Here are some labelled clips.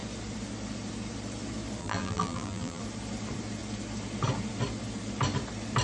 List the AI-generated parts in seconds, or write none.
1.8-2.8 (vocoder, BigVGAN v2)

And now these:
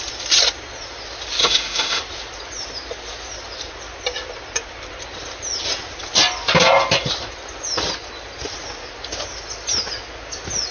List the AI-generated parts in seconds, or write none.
1.4-2.0 (autoencoder, DAC-VAE)

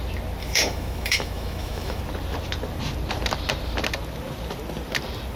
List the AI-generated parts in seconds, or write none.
0.4-2.0 (autoencoder, DAC-VAE)

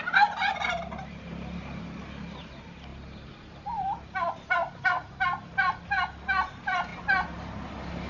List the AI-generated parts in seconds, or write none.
none

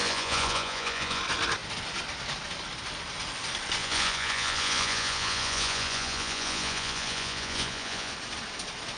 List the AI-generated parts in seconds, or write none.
0.0-1.2 (vocoder, Vocos); 3.8-8.1

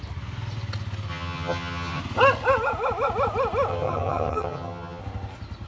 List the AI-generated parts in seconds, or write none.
1.1-2.0 (vocoder, HiFi-GAN); 3.7-5.0

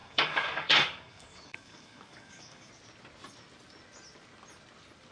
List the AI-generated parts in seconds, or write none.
0.0-2.7 (codec, DAC)